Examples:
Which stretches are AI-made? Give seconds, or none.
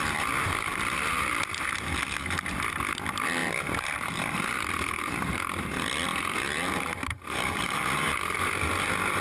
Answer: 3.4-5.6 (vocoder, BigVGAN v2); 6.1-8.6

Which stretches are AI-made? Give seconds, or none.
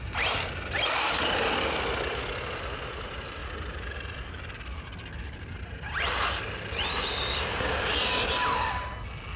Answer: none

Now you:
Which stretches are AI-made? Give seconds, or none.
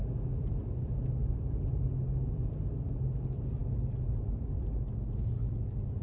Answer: none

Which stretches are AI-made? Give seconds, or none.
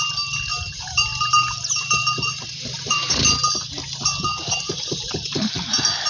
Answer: 0.5-3.1 (vocoder, BigVGAN v2); 4.3-5.5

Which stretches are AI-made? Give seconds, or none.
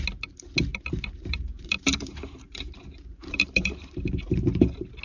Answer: 0.7-3.7 (vocoder, BigVGAN v2)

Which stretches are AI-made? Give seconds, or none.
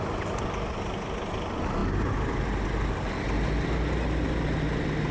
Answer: none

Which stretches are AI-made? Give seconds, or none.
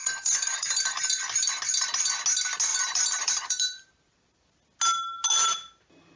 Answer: 0.0-1.5 (vocoder, BigVGAN v2); 2.7-4.5